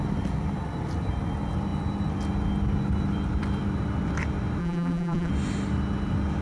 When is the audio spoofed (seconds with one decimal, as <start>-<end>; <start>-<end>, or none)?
4.6-5.3